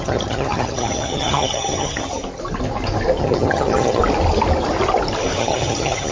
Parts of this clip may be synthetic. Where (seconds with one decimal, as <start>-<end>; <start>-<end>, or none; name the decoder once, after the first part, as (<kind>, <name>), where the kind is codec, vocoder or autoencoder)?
0.0-2.2 (vocoder, HiFi-GAN); 3.2-4.0; 5.4-6.1